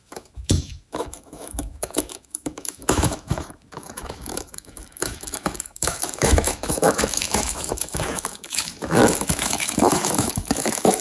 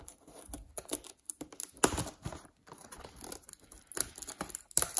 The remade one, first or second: first